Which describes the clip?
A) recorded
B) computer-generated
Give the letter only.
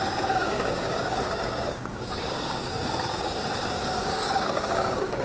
B